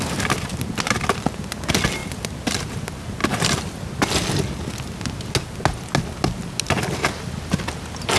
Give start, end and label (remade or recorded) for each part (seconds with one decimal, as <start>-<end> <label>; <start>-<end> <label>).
0.0-8.2 recorded